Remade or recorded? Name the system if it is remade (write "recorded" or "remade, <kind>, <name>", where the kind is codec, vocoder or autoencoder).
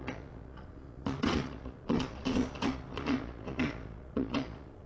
remade, vocoder, Vocos